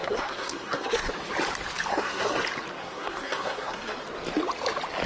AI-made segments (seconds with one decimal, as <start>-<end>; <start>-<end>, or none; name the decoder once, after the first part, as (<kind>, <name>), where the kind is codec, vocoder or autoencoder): 0.0-1.1 (codec, SNAC); 1.9-2.4; 2.8-4.0